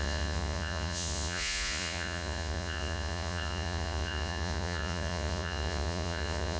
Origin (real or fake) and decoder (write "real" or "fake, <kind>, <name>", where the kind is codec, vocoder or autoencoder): fake, vocoder, Vocos